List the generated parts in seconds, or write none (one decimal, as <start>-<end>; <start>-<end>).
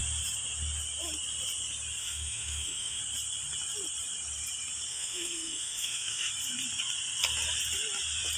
2.0-3.0; 4.9-6.3